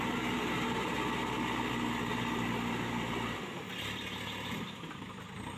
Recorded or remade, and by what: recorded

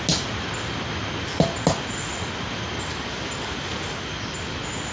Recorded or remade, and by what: recorded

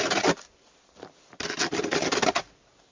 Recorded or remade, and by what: recorded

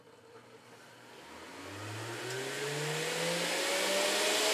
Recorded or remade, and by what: recorded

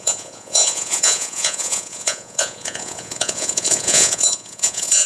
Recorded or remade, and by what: remade, vocoder, Vocos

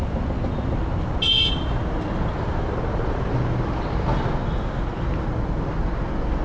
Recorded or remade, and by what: recorded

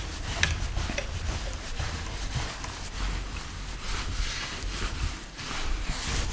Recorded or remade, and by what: recorded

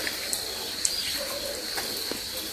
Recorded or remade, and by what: recorded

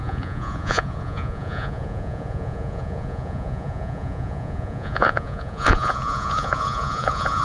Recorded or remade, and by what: remade, vocoder, Vocos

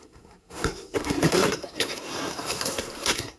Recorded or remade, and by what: remade, codec, SNAC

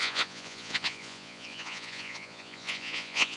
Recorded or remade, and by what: remade, vocoder, Vocos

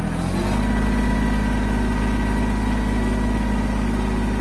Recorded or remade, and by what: recorded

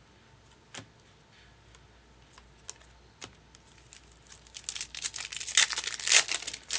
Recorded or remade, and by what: recorded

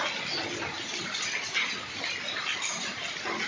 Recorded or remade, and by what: recorded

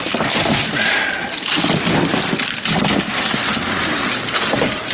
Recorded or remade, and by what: recorded